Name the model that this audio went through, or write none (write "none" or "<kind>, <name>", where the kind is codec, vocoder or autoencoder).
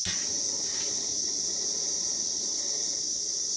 none